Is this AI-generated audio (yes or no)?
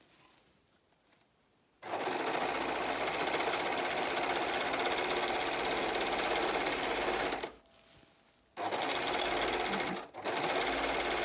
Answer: no